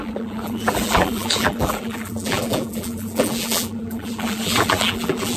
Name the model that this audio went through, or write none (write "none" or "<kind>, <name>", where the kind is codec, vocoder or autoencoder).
vocoder, BigVGAN v2